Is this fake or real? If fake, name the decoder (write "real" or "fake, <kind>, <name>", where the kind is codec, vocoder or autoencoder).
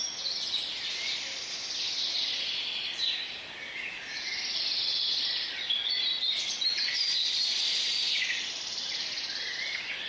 real